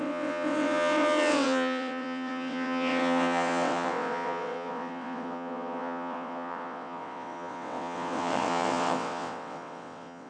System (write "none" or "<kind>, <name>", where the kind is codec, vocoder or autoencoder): vocoder, WaveNeXt